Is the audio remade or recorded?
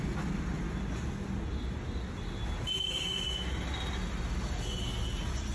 recorded